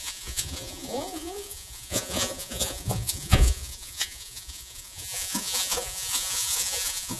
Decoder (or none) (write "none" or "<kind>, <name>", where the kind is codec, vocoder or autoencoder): vocoder, Vocos